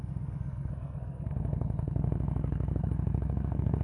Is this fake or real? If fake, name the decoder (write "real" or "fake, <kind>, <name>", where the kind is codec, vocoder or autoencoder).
fake, codec, SNAC